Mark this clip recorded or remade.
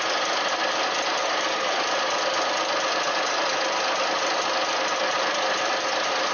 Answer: recorded